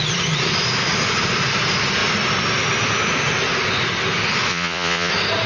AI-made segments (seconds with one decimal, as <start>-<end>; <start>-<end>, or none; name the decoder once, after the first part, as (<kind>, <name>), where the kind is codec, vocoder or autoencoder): 4.5-5.1 (vocoder, Vocos)